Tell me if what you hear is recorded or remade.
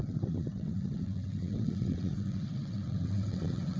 remade